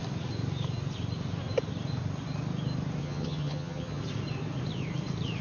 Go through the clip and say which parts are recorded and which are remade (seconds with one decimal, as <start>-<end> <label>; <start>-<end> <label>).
0.0-3.0 recorded; 3.0-4.0 remade; 4.0-5.4 recorded